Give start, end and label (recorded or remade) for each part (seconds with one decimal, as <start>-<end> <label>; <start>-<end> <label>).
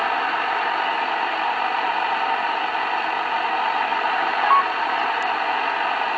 0.0-6.2 recorded